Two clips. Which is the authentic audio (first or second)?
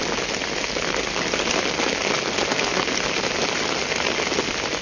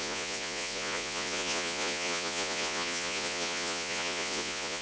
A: first